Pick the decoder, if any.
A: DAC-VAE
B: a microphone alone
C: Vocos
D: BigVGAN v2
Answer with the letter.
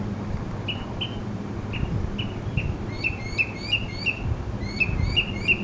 D